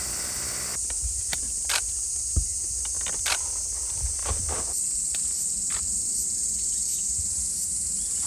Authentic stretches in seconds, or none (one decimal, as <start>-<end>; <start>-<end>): 0.0-8.3